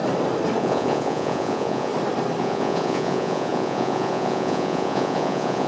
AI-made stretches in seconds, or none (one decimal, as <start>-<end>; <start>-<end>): 0.6-1.9; 2.4-5.7